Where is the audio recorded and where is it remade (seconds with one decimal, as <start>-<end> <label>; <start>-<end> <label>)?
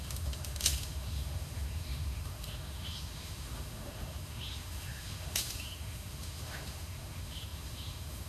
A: 0.0-8.3 remade